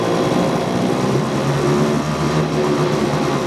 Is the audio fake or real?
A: real